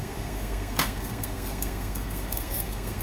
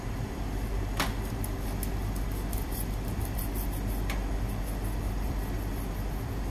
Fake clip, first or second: first